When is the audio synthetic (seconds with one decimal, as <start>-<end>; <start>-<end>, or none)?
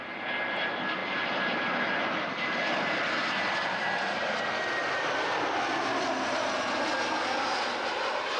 1.0-5.6